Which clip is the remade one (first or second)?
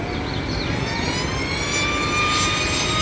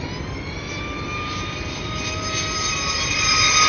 second